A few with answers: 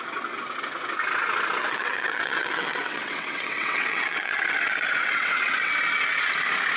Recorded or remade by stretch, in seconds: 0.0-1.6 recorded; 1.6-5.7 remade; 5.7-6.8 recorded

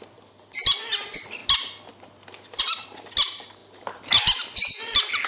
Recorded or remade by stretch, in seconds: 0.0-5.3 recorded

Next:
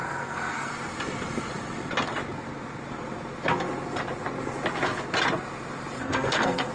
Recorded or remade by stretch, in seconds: 0.0-0.7 remade; 0.7-6.0 recorded; 6.0-6.7 remade

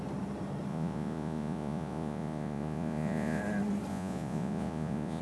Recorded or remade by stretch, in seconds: 0.0-0.7 recorded; 0.7-3.4 remade; 3.4-3.9 recorded; 3.9-5.2 remade